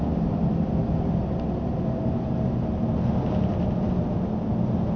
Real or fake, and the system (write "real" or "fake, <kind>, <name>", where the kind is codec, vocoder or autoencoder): real